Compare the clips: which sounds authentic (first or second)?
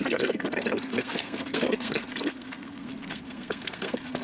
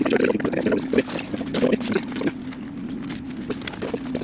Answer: second